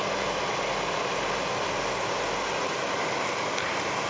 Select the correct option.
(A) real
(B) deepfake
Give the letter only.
A